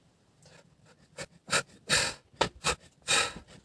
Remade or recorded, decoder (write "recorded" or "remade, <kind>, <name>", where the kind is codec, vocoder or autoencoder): recorded